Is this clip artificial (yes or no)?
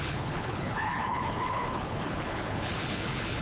yes